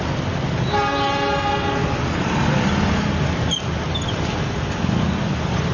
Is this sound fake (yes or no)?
no